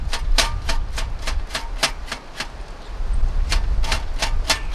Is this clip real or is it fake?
real